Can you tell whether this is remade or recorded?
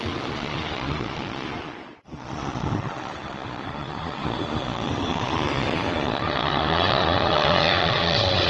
remade